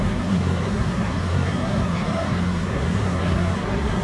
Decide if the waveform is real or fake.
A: fake